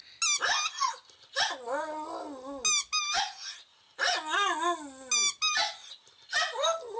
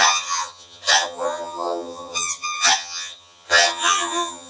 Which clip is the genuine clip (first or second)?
first